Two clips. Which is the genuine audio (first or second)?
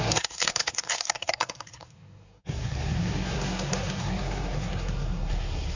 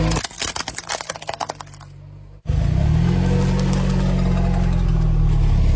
second